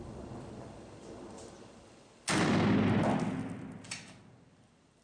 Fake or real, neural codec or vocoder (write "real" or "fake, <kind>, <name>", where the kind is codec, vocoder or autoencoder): real